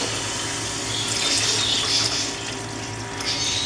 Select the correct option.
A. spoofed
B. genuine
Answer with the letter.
B